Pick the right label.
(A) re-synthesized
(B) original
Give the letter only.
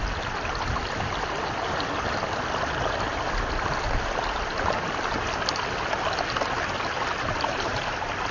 B